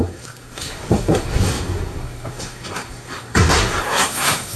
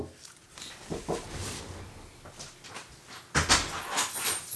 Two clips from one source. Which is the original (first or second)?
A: second